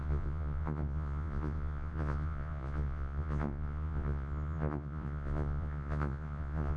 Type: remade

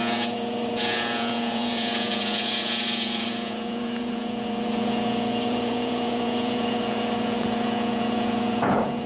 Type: remade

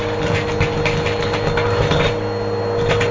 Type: recorded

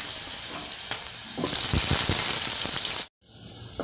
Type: recorded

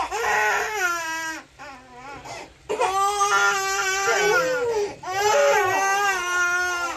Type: recorded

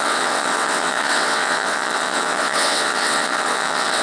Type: remade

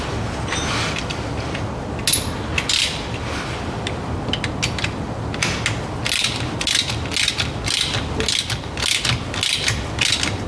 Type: recorded